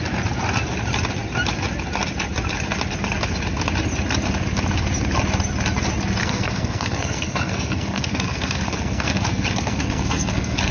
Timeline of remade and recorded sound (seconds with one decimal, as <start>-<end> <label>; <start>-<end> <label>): 0.0-6.2 recorded; 6.2-10.7 remade